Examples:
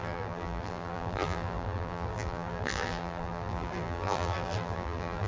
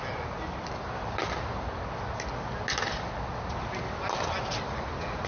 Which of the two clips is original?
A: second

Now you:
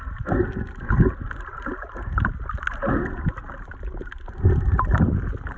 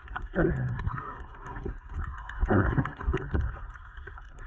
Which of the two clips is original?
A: first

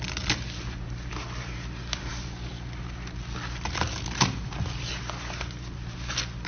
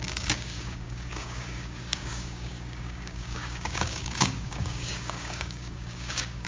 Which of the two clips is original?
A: first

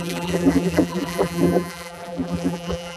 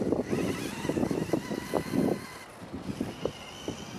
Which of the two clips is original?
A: second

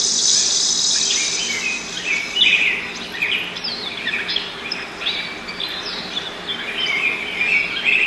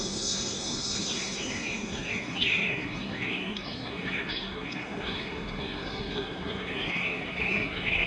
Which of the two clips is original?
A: first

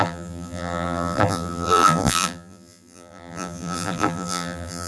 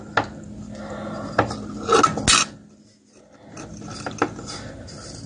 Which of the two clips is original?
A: second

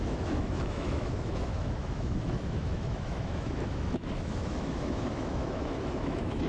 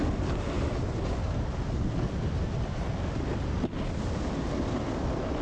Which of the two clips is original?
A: second